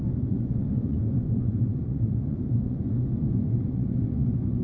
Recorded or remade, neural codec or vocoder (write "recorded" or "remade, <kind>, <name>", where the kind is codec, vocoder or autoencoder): remade, vocoder, Vocos